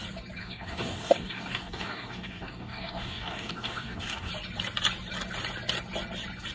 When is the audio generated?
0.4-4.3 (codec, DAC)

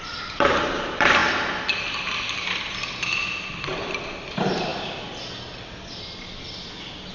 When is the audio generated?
0.0-1.2 (vocoder, BigVGAN v2); 3.5-4.7

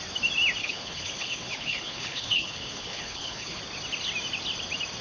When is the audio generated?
0.6-3.6 (codec, HILCodec)

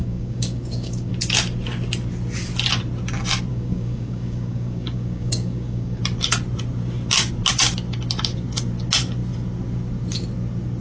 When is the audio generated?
0.0-1.1 (codec, DAC); 3.5-6.0

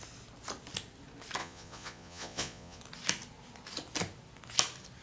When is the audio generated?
1.4-2.8 (vocoder, Vocos)

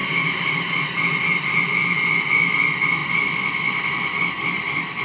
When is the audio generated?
0.0-1.6 (vocoder, BigVGAN v2)

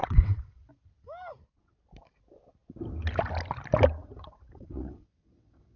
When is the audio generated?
0.0-0.7 (vocoder, WaveNeXt); 4.0-5.8